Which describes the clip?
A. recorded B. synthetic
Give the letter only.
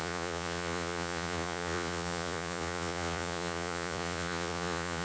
B